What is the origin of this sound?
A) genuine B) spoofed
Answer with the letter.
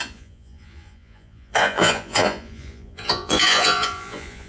B